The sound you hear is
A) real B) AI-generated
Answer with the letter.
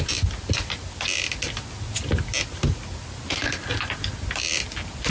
A